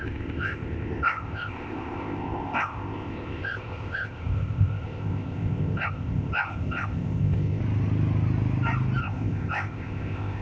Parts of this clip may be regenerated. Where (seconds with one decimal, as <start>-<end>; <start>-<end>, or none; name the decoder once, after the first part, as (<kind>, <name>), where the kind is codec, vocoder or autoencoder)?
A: 0.0-7.6 (codec, ZipCodec); 9.0-10.4